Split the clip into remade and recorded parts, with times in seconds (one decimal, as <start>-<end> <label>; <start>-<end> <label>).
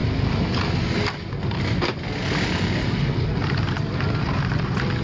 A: 0.0-5.0 recorded